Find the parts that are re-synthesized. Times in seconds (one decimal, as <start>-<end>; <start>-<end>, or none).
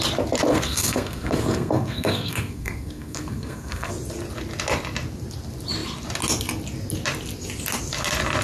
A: 0.5-3.9